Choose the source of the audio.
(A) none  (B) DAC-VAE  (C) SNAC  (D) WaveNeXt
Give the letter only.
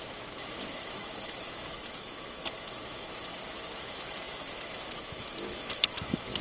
B